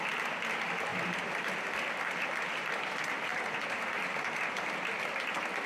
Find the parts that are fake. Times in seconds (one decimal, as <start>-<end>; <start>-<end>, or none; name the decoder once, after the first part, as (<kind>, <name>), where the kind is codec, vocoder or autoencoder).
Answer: none